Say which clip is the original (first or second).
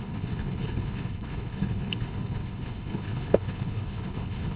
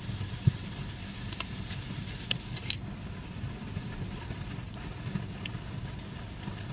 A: second